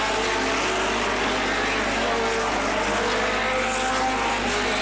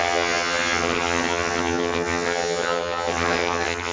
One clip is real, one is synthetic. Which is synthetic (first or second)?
second